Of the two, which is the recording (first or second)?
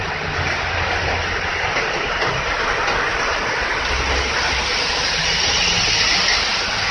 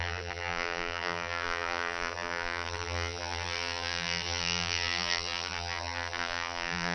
first